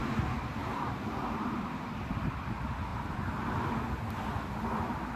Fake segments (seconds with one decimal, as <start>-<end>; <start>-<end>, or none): 0.6-1.9; 2.9-3.8